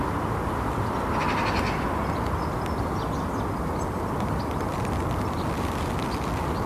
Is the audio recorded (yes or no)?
yes